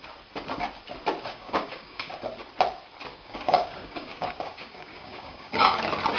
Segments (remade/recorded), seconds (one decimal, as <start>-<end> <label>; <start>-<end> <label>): 0.0-1.3 recorded; 1.3-2.1 remade; 2.1-3.1 recorded; 3.1-5.8 remade; 5.8-6.2 recorded